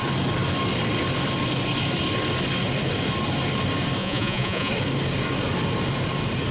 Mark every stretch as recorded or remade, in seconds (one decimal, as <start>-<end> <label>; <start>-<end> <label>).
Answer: 0.0-4.0 recorded; 4.0-4.7 remade; 4.7-6.5 recorded